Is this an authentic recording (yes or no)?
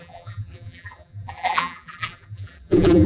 no